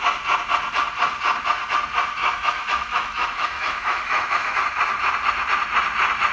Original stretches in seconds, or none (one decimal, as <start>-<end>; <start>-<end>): 0.0-2.2; 4.6-6.3